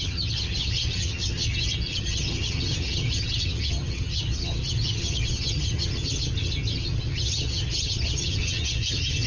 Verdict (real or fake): fake